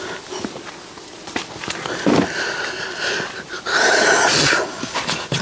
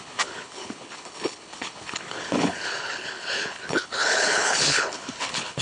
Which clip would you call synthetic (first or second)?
second